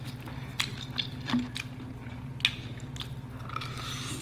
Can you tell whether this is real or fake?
real